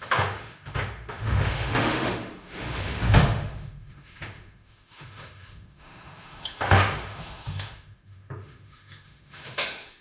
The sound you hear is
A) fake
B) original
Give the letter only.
A